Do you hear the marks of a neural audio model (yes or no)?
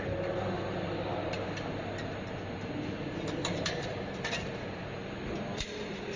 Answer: no